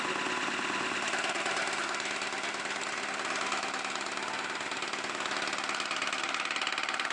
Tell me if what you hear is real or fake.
real